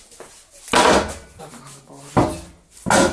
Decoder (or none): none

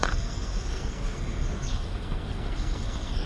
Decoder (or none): codec, SNAC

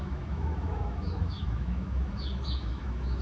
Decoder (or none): autoencoder, DAC-VAE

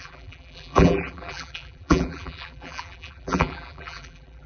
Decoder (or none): vocoder, BigVGAN v2